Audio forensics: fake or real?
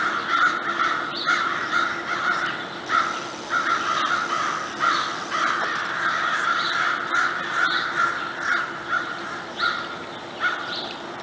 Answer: real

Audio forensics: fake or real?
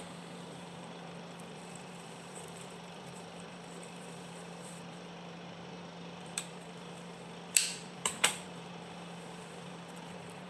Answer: fake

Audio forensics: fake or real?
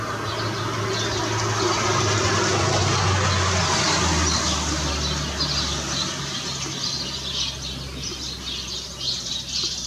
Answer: real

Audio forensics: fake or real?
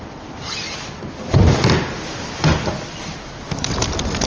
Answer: real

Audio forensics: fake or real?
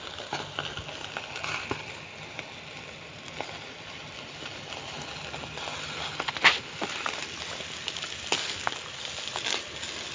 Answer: real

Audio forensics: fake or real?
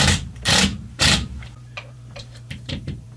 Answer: fake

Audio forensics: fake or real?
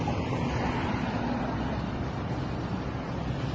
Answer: real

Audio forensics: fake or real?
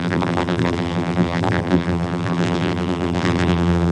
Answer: fake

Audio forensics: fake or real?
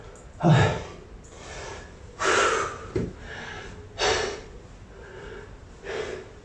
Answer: real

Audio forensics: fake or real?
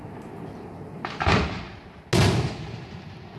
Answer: real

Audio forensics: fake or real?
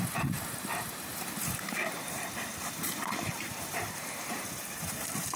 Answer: fake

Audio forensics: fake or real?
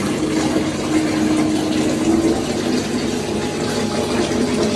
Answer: real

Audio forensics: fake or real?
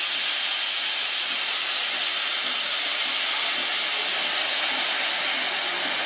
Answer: real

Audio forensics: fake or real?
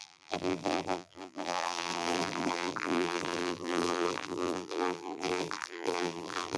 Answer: fake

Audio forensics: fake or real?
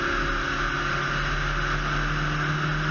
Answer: real